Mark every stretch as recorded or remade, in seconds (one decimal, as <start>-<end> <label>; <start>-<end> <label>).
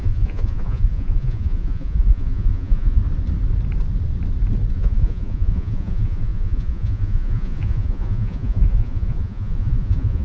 0.0-3.0 remade; 3.0-4.7 recorded; 4.7-10.2 remade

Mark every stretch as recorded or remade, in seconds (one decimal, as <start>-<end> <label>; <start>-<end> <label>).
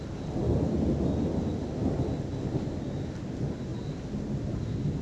0.0-5.0 recorded